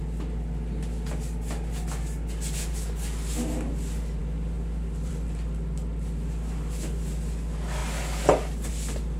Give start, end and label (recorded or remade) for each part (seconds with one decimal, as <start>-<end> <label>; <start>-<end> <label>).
0.0-9.2 recorded